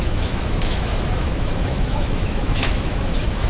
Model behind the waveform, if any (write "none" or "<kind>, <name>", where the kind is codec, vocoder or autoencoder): autoencoder, DAC-VAE